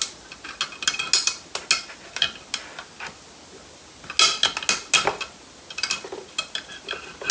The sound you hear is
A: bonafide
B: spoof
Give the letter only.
A